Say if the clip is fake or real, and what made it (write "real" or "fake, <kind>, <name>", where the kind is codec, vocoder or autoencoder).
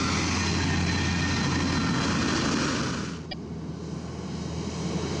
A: real